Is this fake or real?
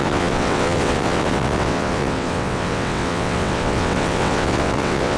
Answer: fake